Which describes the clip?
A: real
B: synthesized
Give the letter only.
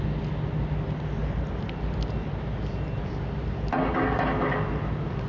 A